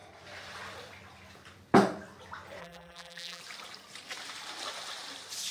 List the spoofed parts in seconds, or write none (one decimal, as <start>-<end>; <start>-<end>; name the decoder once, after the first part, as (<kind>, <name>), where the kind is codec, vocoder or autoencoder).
2.6-3.4 (vocoder, BigVGAN v2)